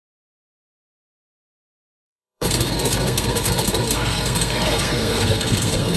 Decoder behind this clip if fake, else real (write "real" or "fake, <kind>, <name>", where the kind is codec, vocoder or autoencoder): fake, codec, SNAC